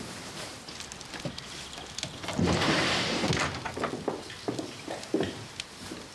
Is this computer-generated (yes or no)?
no